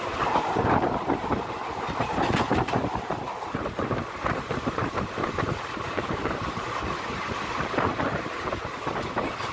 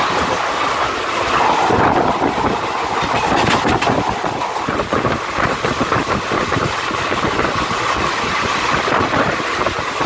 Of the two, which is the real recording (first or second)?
second